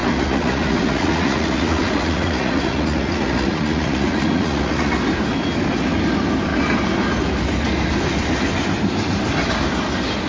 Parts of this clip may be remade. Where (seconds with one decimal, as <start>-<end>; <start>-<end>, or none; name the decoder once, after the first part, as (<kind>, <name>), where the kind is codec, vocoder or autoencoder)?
0.0-5.0 (vocoder, Vocos)